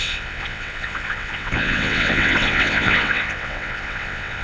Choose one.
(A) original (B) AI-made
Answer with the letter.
B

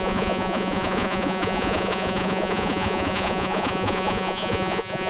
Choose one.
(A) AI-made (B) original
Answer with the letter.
A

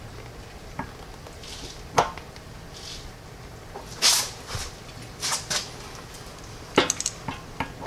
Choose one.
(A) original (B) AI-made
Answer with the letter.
A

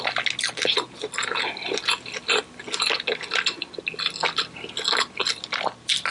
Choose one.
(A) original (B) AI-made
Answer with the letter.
A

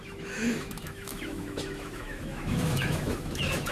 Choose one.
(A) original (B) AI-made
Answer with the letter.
B